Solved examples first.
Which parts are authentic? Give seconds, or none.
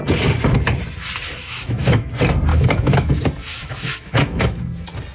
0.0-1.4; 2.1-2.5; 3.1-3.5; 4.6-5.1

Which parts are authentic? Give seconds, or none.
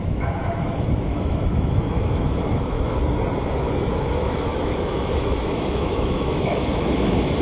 3.0-3.6